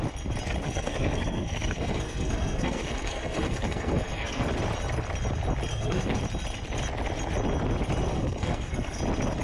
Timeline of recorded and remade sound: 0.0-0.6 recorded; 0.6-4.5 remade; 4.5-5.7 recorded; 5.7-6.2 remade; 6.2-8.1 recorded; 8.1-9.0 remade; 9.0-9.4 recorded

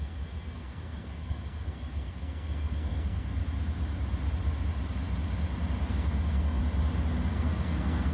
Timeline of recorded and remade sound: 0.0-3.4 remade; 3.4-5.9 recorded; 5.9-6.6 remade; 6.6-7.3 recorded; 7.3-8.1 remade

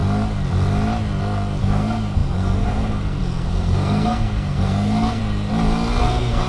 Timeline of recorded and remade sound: 0.0-1.6 recorded; 1.6-5.2 remade; 5.2-6.0 recorded; 6.0-6.5 remade

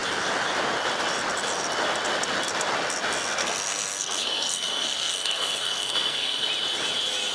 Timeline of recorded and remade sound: 0.0-3.4 recorded; 3.4-6.5 remade; 6.5-7.3 recorded